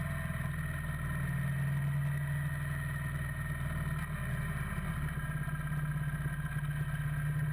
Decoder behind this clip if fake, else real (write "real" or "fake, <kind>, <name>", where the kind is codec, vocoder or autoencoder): real